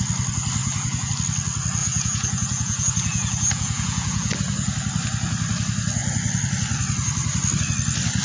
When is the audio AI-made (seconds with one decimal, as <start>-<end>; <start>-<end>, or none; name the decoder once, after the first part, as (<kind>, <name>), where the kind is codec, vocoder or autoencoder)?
0.6-1.1 (vocoder, Vocos); 1.8-4.3